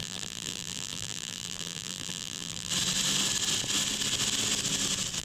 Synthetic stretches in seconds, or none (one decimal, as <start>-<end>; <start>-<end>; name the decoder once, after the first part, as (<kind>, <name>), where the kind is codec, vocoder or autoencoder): 0.0-2.7 (vocoder, BigVGAN v2)